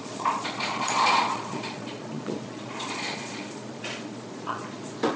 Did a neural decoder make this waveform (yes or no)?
yes